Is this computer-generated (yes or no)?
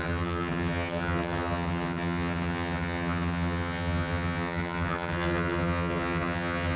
yes